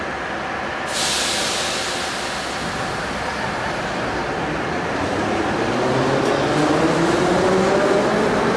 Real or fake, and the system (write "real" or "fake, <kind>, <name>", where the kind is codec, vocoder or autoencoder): real